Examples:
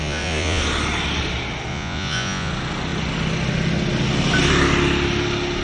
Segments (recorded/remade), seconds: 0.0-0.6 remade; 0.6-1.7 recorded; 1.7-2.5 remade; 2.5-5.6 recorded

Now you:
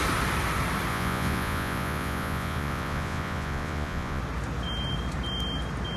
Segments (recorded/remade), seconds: 0.0-0.9 recorded; 0.9-4.2 remade; 4.2-6.0 recorded

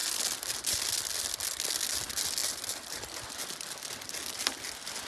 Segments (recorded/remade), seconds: 0.0-0.9 remade; 0.9-5.1 recorded

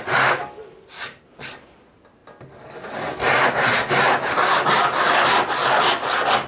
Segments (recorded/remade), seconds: 0.0-6.5 recorded